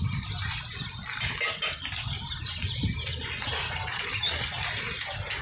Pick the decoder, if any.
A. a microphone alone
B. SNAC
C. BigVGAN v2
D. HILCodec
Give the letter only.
A